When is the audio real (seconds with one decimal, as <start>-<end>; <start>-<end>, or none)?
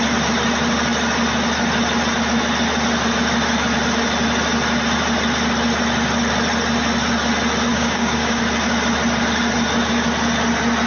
0.0-7.7; 8.4-10.9